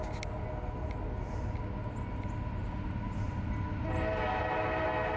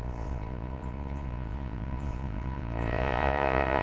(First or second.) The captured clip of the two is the first